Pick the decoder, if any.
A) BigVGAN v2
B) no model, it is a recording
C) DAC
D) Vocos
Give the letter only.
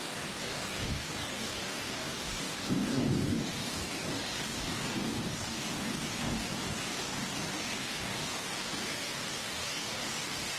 C